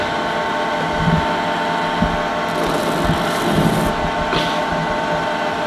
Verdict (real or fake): real